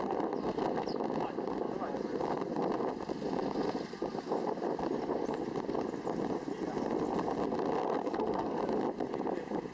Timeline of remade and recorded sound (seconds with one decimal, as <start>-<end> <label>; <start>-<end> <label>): 0.0-8.0 recorded; 8.0-8.6 remade; 8.6-9.7 recorded